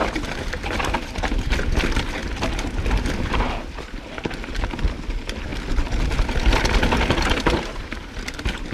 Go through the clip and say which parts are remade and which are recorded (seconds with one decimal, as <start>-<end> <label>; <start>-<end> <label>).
0.0-8.7 recorded